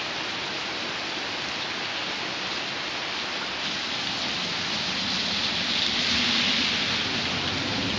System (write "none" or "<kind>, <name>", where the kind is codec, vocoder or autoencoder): none